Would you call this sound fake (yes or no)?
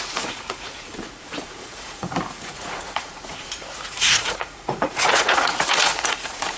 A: yes